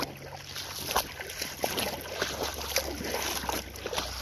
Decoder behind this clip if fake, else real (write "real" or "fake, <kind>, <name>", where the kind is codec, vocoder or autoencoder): real